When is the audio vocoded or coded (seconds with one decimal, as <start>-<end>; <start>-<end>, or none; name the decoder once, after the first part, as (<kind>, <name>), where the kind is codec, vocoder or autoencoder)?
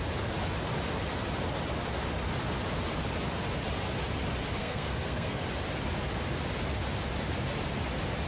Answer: 4.6-5.4 (codec, SNAC)